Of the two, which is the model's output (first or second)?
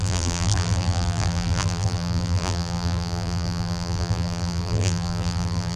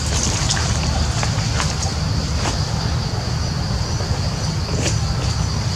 first